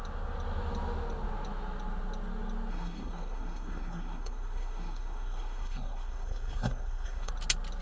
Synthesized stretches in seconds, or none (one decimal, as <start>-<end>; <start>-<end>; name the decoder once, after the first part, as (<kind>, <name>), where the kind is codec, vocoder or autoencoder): 2.7-7.3 (codec, SNAC)